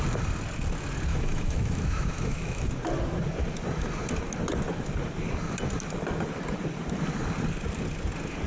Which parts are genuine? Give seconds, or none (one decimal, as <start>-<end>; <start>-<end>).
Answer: 0.0-1.1; 2.7-8.5